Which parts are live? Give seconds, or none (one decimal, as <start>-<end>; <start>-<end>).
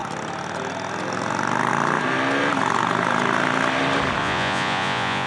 0.0-4.2